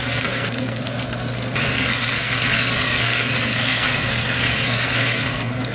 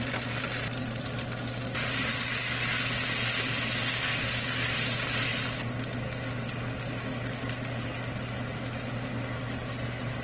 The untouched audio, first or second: second